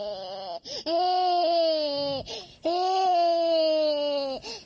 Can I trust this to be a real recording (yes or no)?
yes